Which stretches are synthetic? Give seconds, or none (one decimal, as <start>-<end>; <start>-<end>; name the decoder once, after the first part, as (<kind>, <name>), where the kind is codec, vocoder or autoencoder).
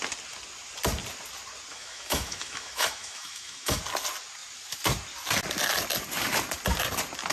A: 1.7-3.8 (autoencoder, DAC-VAE)